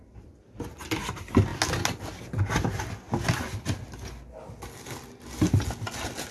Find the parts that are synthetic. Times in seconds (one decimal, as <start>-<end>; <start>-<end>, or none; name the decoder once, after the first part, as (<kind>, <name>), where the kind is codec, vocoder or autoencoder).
none

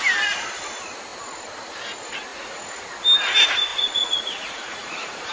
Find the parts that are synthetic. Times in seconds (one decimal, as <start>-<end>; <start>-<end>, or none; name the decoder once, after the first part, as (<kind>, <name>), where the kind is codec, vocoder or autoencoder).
2.3-2.8 (vocoder, Vocos); 3.7-5.3

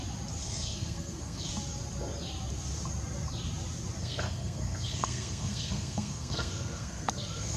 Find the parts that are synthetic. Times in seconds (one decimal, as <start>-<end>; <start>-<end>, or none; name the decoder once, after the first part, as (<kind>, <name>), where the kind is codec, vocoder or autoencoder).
0.4-1.5 (codec, SNAC); 4.0-7.6

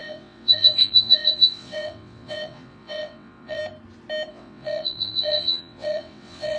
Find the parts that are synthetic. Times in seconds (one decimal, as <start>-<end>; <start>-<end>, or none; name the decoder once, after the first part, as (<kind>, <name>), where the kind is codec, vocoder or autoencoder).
0.0-3.6 (vocoder, WaveNeXt); 4.3-6.6

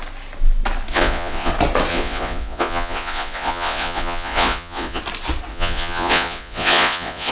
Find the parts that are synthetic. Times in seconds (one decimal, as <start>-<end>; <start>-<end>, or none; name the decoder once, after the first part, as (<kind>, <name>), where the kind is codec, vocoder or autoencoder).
0.9-1.5 (vocoder, Vocos); 1.9-5.0; 5.5-7.3

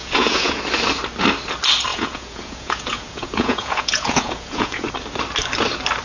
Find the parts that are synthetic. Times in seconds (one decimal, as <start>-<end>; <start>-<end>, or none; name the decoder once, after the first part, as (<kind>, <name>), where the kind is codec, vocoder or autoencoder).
0.0-0.6 (vocoder, Vocos); 1.9-4.9

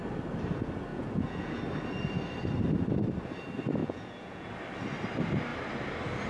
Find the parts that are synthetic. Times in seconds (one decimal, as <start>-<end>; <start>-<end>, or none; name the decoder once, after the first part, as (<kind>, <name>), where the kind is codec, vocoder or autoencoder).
0.9-1.6 (vocoder, Vocos); 3.8-4.5